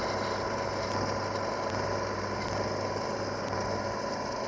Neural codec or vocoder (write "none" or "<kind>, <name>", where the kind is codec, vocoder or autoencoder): none